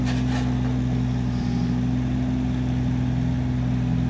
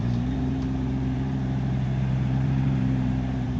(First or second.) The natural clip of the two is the first